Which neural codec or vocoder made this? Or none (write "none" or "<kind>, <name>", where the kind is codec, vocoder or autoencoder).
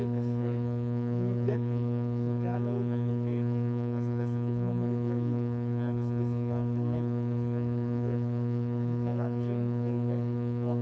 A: codec, SNAC